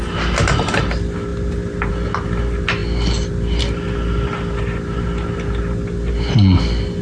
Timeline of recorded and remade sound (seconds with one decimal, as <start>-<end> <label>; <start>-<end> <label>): 0.0-7.0 recorded